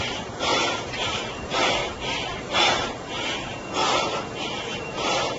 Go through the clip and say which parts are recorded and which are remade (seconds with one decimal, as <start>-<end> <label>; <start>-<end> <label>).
0.0-1.8 remade; 1.8-2.4 recorded; 2.4-3.8 remade; 3.8-4.5 recorded; 4.5-5.4 remade